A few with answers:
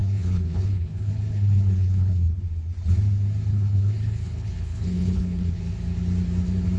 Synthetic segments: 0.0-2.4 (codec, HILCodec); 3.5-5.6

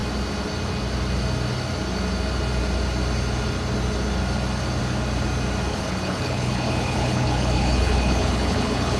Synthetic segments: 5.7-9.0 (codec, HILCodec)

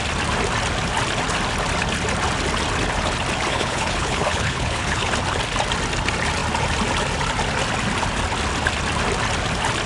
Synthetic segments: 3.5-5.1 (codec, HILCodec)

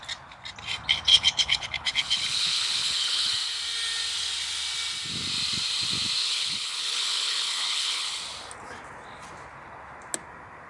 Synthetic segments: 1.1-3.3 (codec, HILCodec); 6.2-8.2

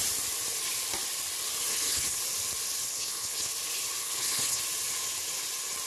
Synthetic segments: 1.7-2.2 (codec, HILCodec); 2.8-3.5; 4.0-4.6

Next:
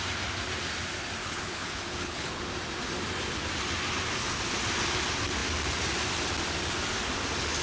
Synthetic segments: 1.2-2.4 (codec, HILCodec)

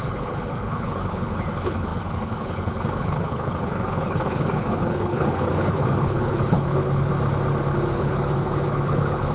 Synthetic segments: 0.0-7.1 (codec, HILCodec); 7.9-9.3